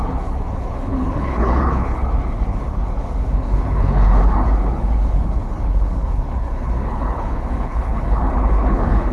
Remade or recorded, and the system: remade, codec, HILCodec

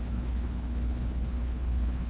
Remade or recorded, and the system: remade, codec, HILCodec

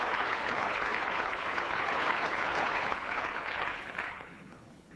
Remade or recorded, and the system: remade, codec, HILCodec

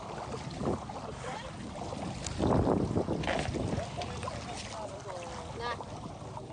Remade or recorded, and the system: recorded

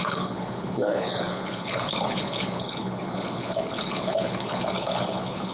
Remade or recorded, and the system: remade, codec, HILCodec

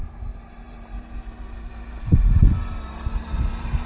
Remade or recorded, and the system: recorded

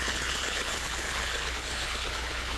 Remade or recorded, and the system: remade, codec, HILCodec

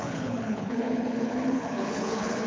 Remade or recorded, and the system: remade, codec, HILCodec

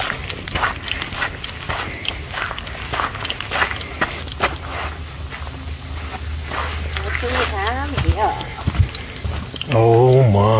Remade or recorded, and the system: recorded